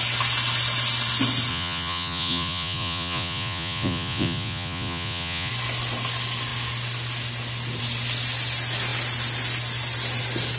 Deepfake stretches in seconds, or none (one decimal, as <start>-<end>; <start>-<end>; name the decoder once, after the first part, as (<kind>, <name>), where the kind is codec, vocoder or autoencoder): 1.5-5.5 (vocoder, Vocos)